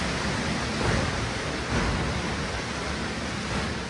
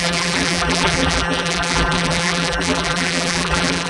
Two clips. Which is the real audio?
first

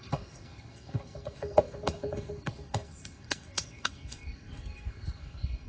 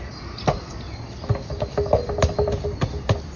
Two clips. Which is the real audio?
second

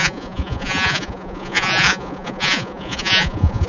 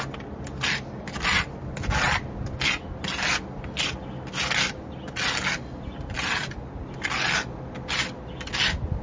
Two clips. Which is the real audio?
second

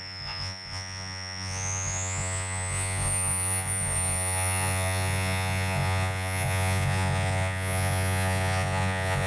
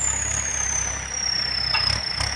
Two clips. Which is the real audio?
second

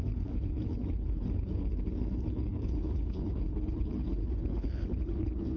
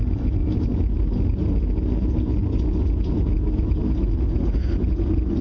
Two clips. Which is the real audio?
second